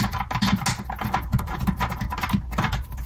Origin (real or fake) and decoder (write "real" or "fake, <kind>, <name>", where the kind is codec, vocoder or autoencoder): real